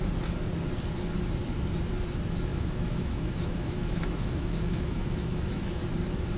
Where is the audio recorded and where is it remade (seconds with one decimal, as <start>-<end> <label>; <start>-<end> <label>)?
0.0-2.5 recorded; 2.5-5.8 remade; 5.8-6.4 recorded